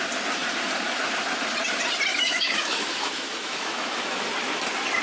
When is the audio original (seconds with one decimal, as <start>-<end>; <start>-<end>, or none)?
0.0-2.1; 4.2-5.0